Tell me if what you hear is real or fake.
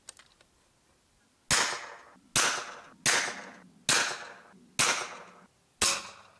real